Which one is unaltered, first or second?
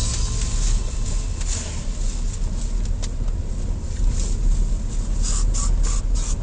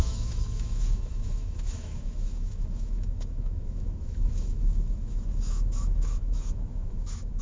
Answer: first